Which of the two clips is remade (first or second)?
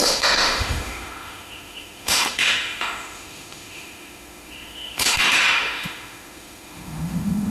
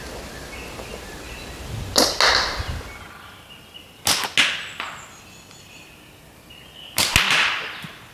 first